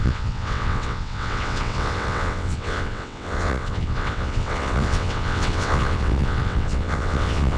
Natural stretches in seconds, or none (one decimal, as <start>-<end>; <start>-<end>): none